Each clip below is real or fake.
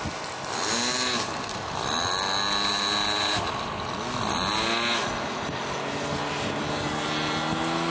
real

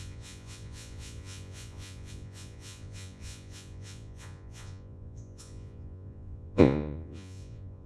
fake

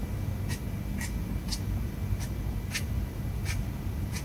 real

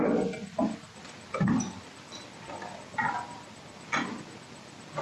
real